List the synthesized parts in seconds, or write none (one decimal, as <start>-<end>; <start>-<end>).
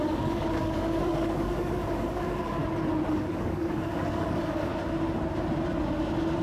0.0-2.6; 3.1-4.7